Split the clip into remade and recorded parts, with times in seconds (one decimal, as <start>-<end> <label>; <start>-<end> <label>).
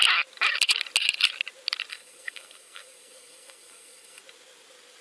0.0-1.9 recorded; 1.9-4.2 remade; 4.2-5.0 recorded